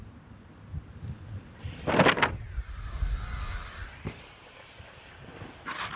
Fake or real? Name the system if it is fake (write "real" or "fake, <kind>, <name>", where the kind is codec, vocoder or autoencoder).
real